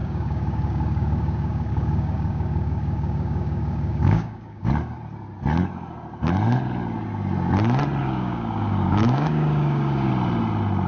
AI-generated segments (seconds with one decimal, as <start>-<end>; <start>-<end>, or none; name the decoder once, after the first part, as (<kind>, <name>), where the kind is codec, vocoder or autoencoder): 0.0-4.7 (codec, DAC); 8.0-10.1